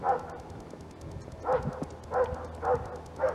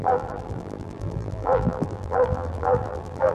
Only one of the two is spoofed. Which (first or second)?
second